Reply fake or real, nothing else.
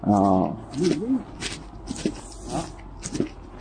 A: real